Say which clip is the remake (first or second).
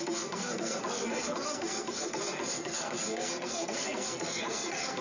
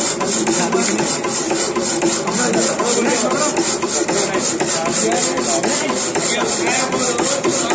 first